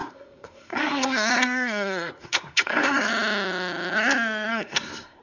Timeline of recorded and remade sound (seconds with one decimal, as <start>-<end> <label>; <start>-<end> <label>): 0.0-3.1 remade; 3.1-4.5 recorded; 4.5-5.2 remade